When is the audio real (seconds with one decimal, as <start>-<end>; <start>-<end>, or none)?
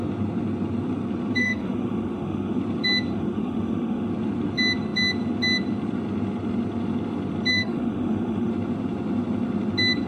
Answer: 0.0-1.4; 2.6-3.1; 4.1-7.5; 8.5-10.1